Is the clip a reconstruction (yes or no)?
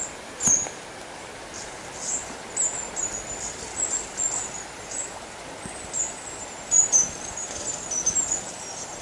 no